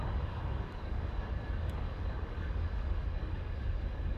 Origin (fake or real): fake